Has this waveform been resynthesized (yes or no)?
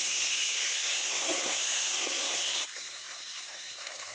yes